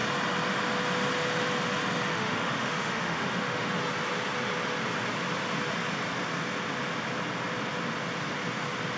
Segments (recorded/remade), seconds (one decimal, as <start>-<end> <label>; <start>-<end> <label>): 0.0-2.1 recorded; 2.1-3.7 remade; 3.7-9.0 recorded